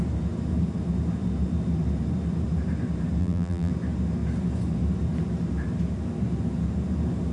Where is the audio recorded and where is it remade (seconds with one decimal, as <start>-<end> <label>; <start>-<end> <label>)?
0.0-3.2 recorded; 3.2-3.7 remade; 3.7-7.3 recorded